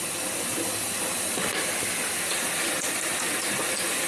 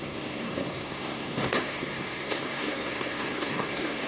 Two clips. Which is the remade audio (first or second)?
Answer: second